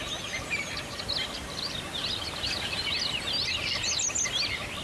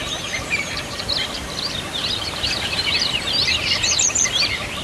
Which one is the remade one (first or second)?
second